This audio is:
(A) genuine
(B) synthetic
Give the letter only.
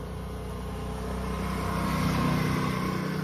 A